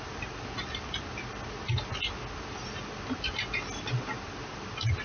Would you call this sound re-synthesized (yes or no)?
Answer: no